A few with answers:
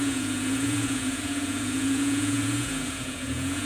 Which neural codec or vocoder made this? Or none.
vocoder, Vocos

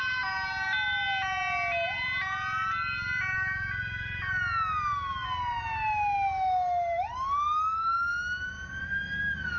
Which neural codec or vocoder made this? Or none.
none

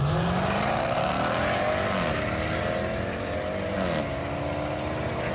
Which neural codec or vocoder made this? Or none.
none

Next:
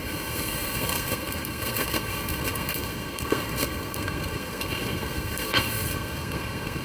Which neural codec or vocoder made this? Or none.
codec, SNAC